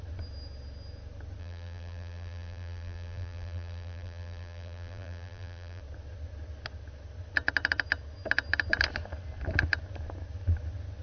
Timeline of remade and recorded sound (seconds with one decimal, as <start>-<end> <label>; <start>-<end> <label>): 0.0-1.4 recorded; 1.4-5.8 remade; 5.8-11.0 recorded